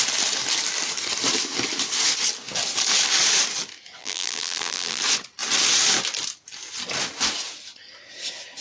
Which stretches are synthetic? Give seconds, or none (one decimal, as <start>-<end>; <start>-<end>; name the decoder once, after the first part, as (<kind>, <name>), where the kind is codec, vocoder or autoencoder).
4.0-5.0 (vocoder, BigVGAN v2)